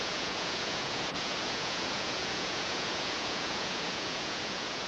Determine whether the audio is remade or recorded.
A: remade